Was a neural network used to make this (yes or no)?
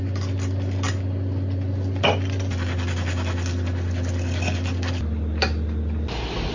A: no